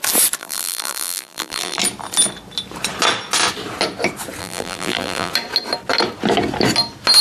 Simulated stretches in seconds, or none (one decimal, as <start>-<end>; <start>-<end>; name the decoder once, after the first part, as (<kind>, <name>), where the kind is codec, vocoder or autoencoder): 0.4-1.8 (vocoder, BigVGAN v2); 4.4-5.3